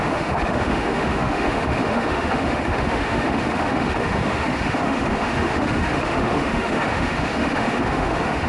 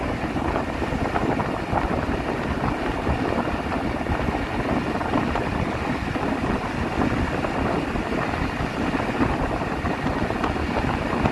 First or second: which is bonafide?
second